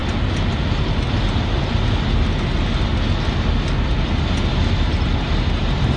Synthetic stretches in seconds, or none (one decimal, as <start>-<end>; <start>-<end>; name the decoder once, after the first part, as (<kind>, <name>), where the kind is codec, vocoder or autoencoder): none